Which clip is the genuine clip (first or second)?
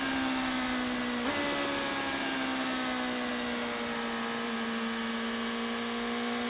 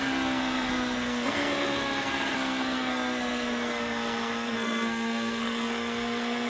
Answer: first